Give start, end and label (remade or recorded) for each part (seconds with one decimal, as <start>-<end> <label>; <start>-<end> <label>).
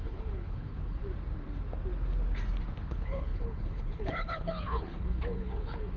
0.0-1.0 remade; 1.0-2.9 recorded; 2.9-6.0 remade